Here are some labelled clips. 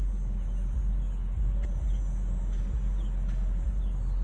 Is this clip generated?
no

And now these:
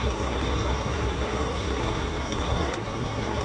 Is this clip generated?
yes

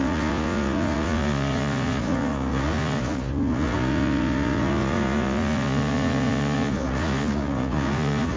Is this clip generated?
yes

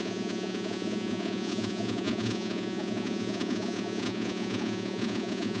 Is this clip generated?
yes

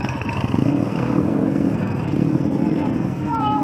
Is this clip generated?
yes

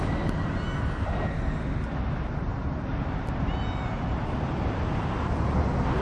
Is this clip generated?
no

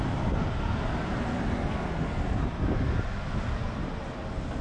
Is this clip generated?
no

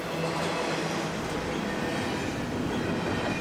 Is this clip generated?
no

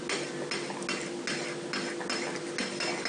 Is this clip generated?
no